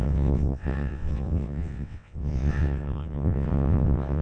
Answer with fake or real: fake